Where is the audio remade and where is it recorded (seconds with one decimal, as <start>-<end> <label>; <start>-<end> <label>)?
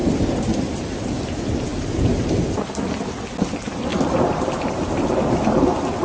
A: 0.0-0.6 remade; 0.6-1.7 recorded; 1.7-2.3 remade; 2.3-3.9 recorded; 3.9-5.5 remade; 5.5-6.0 recorded